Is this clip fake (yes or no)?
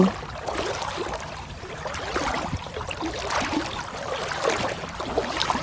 no